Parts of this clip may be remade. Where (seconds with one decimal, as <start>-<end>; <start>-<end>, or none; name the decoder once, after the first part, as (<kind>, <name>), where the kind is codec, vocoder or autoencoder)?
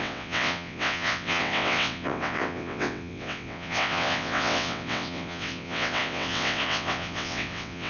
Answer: 0.0-7.9 (vocoder, WaveNeXt)